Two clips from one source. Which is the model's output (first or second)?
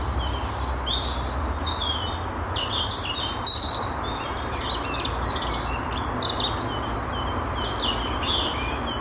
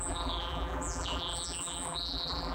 second